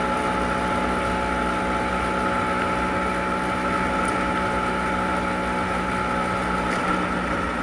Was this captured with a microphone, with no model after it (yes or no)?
yes